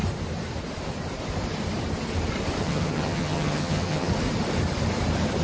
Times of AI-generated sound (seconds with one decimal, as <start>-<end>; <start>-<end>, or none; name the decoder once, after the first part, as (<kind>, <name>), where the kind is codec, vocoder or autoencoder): 2.6-4.1 (vocoder, HiFi-GAN)

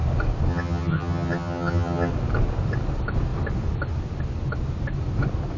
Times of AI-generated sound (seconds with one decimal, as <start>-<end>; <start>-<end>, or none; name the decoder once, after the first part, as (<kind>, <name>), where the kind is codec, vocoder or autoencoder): 0.5-2.1 (vocoder, HiFi-GAN)